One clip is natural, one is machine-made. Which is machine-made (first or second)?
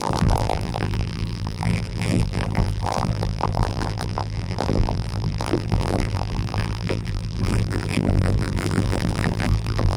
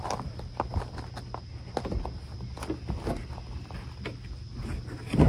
first